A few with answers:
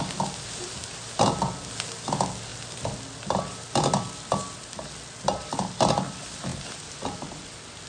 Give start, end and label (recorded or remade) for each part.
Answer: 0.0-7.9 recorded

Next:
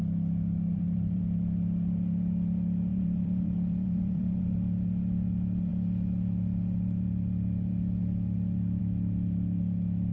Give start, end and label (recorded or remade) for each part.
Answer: 0.0-0.7 recorded; 0.7-1.2 remade; 1.2-2.9 recorded; 2.9-4.5 remade; 4.5-10.1 recorded